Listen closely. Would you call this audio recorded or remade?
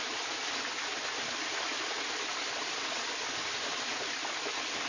recorded